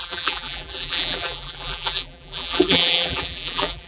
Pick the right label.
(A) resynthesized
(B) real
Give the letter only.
A